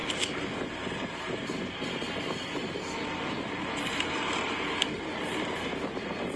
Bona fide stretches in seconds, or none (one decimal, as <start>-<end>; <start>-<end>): 0.0-6.4